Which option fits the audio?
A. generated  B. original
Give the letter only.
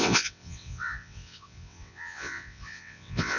A